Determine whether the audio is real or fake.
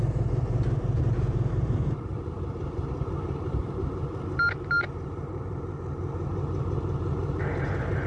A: fake